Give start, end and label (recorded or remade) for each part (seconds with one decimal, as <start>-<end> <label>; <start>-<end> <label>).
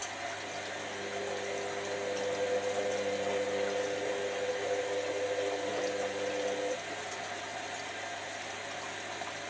0.0-9.5 recorded